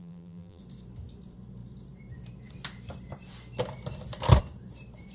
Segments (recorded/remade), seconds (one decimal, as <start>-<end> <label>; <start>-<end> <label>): 0.0-0.6 remade; 0.6-5.1 recorded